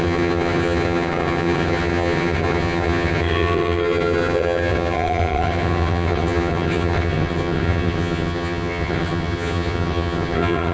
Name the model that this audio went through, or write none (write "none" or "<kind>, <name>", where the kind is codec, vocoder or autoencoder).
vocoder, HiFi-GAN